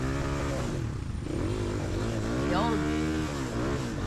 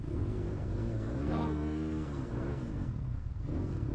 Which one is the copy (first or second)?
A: second